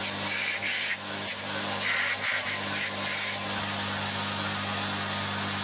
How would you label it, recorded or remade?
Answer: recorded